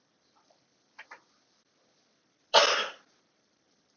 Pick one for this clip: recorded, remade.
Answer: recorded